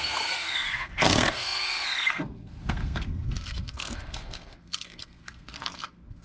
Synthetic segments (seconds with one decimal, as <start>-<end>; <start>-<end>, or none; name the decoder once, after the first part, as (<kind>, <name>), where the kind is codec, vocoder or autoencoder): 0.0-6.2 (codec, SNAC)